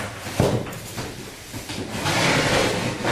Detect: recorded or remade recorded